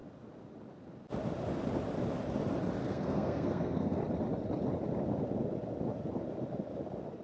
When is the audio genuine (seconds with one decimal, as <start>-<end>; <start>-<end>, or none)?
0.0-2.8; 4.0-7.2